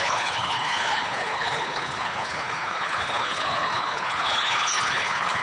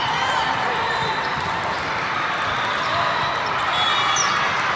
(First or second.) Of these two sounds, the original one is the second